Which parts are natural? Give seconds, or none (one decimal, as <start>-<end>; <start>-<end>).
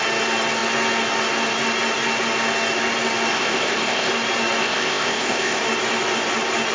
0.0-3.3; 4.1-4.6; 5.6-6.7